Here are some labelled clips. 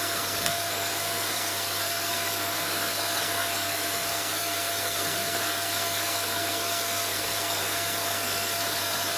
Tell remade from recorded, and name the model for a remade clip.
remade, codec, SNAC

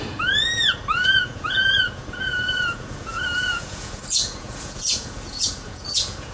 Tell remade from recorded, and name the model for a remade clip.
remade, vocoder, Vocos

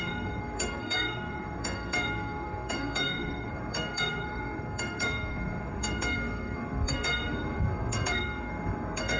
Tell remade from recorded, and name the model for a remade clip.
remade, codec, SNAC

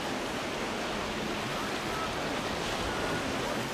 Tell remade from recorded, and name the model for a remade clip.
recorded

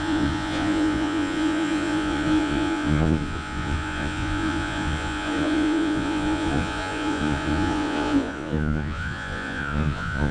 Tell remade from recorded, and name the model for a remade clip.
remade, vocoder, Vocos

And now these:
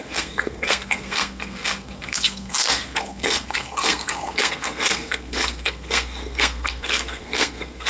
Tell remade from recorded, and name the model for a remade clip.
remade, codec, SNAC